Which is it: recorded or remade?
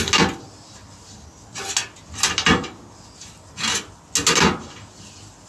recorded